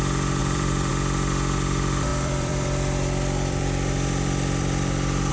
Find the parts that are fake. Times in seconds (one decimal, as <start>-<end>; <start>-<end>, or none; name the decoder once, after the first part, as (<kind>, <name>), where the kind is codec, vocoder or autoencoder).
0.4-0.9 (vocoder, BigVGAN v2); 2.1-5.3